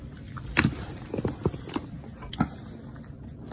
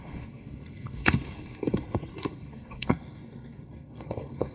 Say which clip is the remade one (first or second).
second